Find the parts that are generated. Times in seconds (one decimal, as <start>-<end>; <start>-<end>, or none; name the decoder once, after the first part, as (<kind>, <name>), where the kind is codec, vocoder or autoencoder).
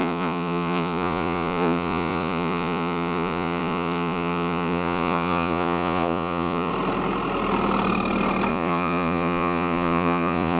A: 0.0-6.7 (vocoder, Vocos); 8.5-10.6